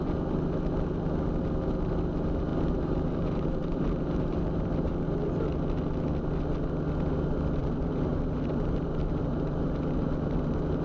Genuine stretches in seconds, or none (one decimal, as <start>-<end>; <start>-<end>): 0.0-2.5; 5.3-7.6; 10.1-10.8